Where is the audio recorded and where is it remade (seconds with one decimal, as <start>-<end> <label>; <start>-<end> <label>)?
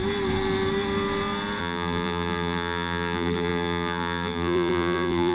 0.0-1.6 recorded; 1.6-5.3 remade